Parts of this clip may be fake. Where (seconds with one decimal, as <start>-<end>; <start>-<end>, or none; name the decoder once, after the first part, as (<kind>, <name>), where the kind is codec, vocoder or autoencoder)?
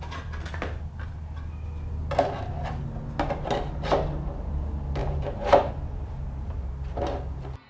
5.0-5.7 (vocoder, BigVGAN v2)